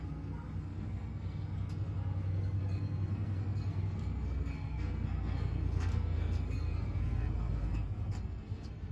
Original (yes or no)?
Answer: no